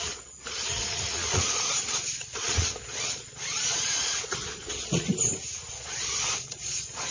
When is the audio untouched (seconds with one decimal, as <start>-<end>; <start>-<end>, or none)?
5.1-5.7